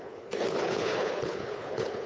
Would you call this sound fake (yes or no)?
yes